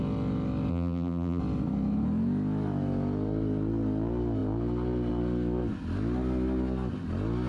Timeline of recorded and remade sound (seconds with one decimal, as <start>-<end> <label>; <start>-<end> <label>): 0.0-0.7 recorded; 0.7-1.4 remade; 1.4-7.5 recorded